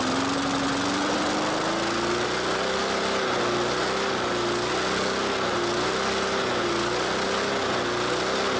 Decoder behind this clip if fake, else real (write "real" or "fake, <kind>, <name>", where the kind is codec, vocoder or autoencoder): real